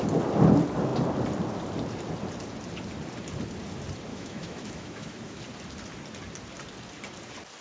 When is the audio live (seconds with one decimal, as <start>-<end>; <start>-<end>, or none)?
0.0-4.1; 5.4-7.6

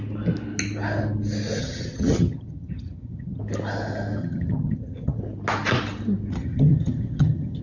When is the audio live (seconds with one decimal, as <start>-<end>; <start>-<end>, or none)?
0.0-1.6; 3.4-4.2; 5.2-6.3

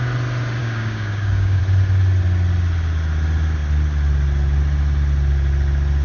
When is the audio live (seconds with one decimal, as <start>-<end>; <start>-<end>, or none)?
0.0-0.6; 1.6-6.0

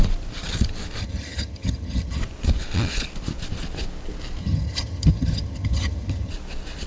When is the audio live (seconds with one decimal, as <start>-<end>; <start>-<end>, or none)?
0.0-1.0; 2.2-4.4; 6.3-6.9

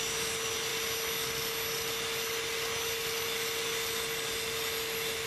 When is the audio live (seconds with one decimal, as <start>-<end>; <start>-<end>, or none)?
0.0-5.3

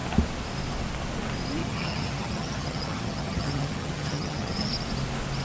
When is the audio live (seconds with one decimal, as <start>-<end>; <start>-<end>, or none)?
0.0-1.6; 4.7-5.4

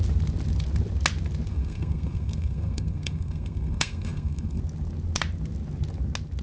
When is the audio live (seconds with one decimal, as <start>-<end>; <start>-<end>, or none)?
0.0-1.5; 4.6-6.4